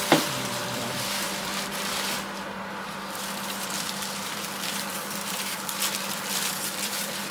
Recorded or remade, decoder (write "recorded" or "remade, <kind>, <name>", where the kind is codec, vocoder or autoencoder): remade, vocoder, BigVGAN v2